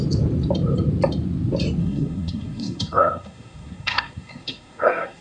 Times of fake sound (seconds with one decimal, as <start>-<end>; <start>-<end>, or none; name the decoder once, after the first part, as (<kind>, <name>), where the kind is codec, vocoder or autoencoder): 1.8-5.2 (codec, SNAC)